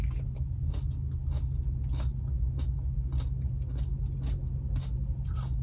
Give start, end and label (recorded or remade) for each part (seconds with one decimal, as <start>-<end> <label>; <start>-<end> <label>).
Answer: 0.0-5.6 recorded